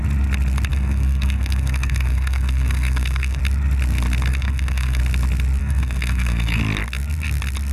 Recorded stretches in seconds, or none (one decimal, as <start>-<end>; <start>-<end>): 0.0-0.7; 3.4-4.3; 5.0-5.6; 6.6-7.7